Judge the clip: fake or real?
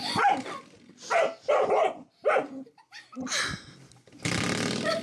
real